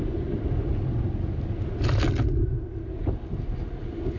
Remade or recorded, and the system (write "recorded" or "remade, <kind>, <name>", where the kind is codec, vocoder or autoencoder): recorded